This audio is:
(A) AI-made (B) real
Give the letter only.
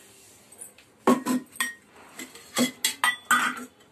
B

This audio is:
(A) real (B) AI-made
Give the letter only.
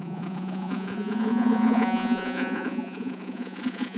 B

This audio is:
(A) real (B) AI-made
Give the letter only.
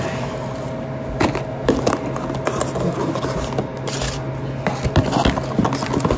A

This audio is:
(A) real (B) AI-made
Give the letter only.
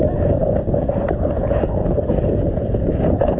A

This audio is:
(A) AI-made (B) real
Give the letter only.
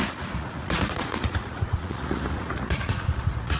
A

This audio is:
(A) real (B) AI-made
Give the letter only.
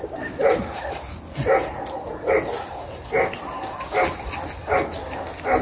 A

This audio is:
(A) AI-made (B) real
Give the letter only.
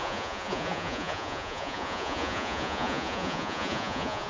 A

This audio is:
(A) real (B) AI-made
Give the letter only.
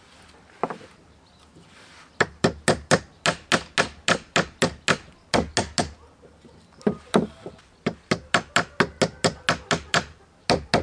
A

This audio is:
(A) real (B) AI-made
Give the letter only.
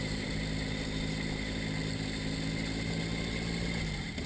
A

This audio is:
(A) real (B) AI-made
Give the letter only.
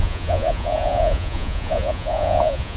B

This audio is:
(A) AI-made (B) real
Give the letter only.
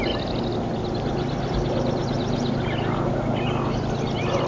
B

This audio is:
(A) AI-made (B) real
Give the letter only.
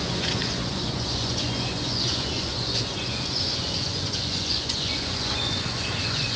A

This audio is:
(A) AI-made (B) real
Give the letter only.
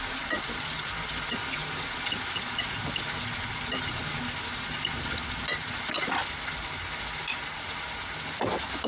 B